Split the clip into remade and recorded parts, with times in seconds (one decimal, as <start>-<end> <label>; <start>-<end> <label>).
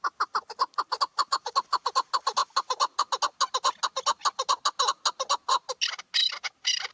0.0-6.9 recorded